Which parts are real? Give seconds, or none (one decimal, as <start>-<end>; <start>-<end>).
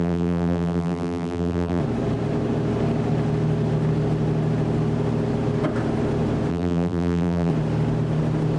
1.8-6.5; 7.5-8.6